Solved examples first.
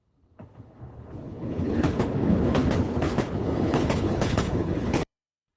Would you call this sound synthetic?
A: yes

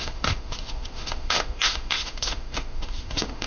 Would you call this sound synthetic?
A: yes